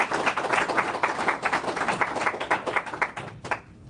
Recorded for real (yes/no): yes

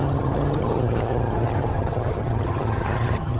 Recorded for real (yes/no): no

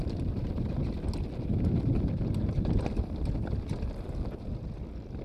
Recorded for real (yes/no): yes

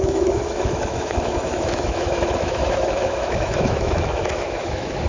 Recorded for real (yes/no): no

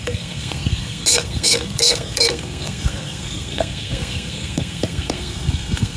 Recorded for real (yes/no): no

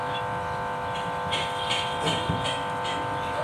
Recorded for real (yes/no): yes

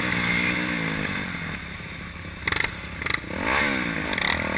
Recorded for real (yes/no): yes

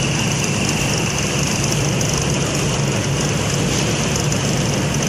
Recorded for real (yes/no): yes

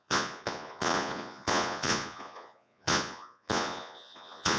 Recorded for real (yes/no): no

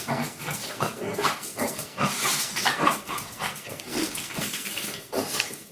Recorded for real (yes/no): no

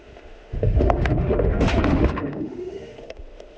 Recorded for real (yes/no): no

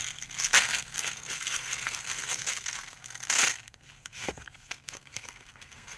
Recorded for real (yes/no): no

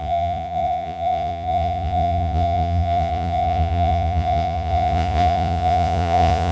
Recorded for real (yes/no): no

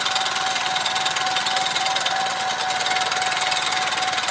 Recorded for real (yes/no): yes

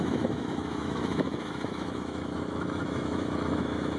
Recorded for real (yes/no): no